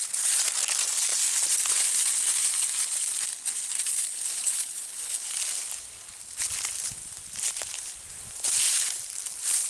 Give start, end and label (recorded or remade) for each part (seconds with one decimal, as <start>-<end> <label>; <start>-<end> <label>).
0.0-4.1 recorded; 4.1-5.4 remade; 5.4-9.7 recorded